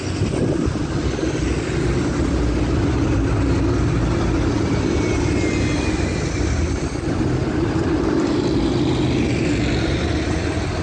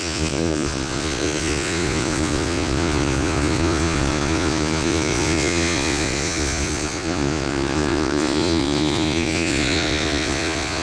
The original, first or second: first